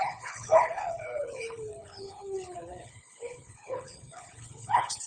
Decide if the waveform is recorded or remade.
remade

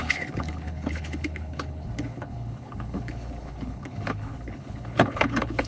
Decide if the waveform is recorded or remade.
remade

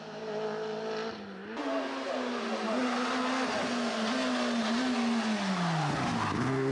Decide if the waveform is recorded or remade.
recorded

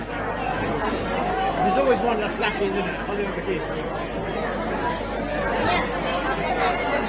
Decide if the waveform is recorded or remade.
recorded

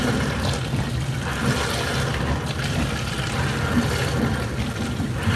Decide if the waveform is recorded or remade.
recorded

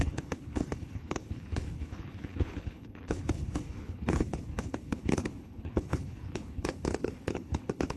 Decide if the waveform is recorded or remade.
remade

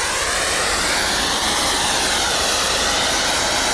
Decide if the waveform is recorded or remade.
recorded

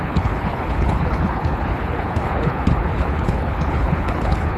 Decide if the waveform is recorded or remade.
remade